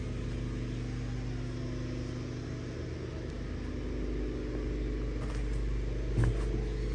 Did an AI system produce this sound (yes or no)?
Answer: no